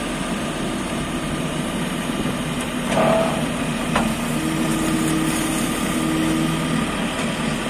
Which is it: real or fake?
real